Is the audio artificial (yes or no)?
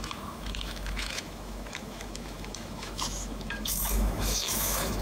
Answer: yes